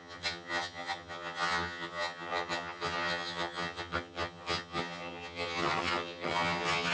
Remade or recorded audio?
remade